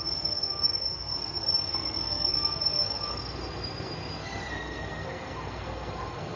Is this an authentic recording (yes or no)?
no